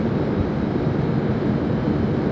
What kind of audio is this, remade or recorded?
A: recorded